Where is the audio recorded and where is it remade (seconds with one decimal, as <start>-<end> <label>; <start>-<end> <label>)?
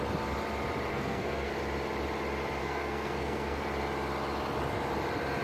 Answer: 0.0-0.9 recorded; 0.9-1.5 remade; 1.5-2.6 recorded; 2.6-3.6 remade; 3.6-5.4 recorded